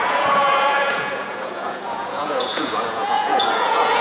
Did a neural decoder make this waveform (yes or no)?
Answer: yes